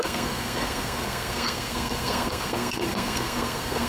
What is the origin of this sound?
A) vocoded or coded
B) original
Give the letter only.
A